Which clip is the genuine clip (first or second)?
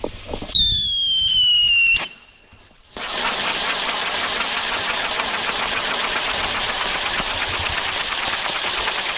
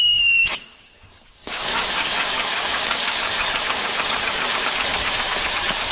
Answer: first